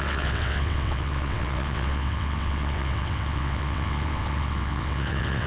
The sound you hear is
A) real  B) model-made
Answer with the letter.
B